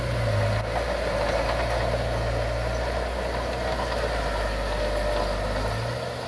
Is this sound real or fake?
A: real